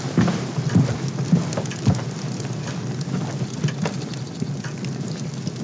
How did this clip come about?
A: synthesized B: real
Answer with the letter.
B